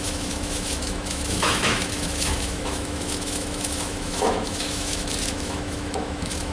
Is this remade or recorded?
remade